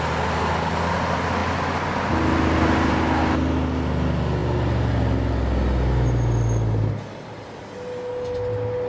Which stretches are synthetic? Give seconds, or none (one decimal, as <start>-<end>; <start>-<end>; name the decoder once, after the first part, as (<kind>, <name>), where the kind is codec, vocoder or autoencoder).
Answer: none